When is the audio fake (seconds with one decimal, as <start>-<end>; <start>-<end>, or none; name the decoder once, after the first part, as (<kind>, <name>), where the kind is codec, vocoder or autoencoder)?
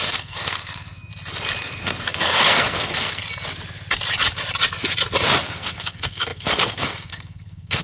0.0-1.1 (codec, SNAC); 1.6-3.2; 5.4-7.8